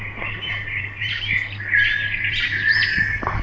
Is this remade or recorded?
recorded